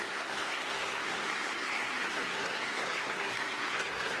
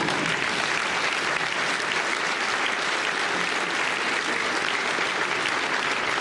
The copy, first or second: first